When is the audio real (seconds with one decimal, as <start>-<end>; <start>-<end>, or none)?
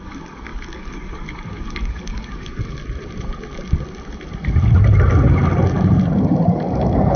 2.8-6.5